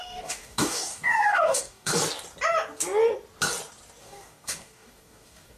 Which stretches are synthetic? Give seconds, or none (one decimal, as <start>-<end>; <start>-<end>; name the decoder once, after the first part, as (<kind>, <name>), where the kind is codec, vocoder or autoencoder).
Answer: 0.0-1.9 (codec, DAC); 4.0-5.6